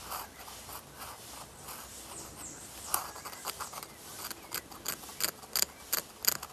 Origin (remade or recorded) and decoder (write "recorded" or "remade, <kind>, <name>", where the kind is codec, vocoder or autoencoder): recorded